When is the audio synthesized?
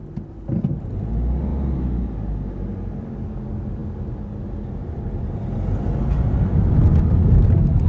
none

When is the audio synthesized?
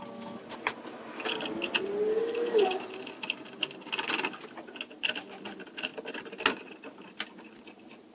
2.2-2.7 (autoencoder, DAC-VAE)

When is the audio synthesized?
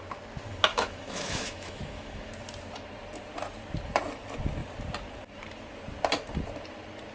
0.7-2.3 (autoencoder, DAC-VAE)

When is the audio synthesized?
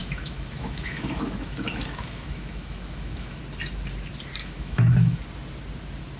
0.0-3.4 (autoencoder, DAC-VAE); 4.4-5.2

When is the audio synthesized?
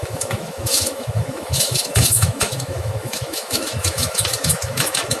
0.0-5.2 (autoencoder, DAC-VAE)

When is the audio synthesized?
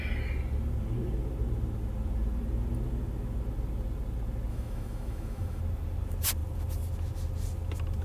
4.5-5.6 (autoencoder, DAC-VAE)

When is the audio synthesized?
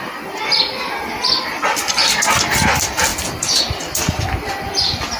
none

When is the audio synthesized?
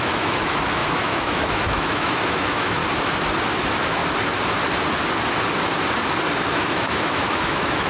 0.0-2.8 (autoencoder, DAC-VAE); 3.6-4.0; 6.5-7.9